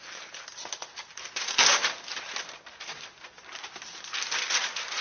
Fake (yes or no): no